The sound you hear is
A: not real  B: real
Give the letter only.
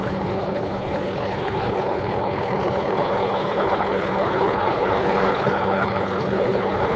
A